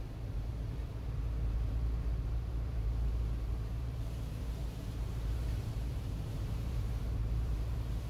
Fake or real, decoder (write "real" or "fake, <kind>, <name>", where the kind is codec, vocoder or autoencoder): fake, vocoder, BigVGAN v2